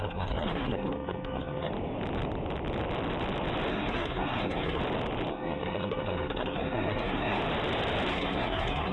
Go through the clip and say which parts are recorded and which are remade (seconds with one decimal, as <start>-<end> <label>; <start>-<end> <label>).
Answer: 0.0-1.7 remade; 1.7-3.7 recorded; 3.7-4.8 remade; 4.8-5.3 recorded; 5.3-7.4 remade; 7.4-8.1 recorded; 8.1-8.9 remade